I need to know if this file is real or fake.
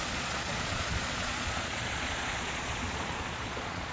fake